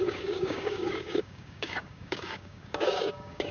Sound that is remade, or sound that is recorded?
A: remade